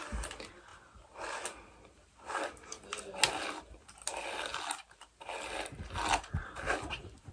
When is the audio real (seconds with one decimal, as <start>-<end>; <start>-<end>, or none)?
0.0-7.3